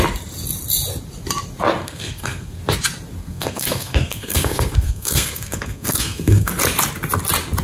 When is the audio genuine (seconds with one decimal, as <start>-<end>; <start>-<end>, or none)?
0.0-1.8; 2.6-3.2; 6.5-7.6